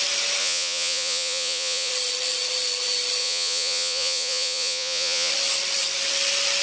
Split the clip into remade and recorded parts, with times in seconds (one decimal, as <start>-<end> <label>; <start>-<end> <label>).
0.0-0.4 recorded; 0.4-1.9 remade; 1.9-3.2 recorded; 3.2-5.3 remade; 5.3-6.6 recorded